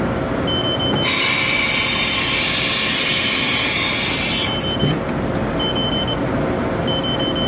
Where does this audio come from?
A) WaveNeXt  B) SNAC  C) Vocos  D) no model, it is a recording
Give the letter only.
D